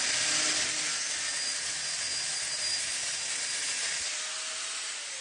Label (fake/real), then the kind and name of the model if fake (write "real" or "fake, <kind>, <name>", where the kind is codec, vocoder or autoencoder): real